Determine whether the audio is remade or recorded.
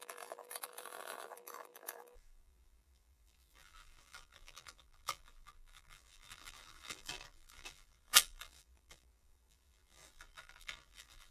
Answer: remade